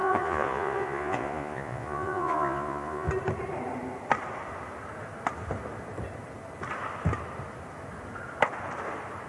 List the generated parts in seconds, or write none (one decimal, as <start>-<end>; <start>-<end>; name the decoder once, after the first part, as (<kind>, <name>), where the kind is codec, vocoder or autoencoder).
0.0-3.1 (vocoder, Vocos)